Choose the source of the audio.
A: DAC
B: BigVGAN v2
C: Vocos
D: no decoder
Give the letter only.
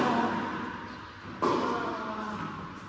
D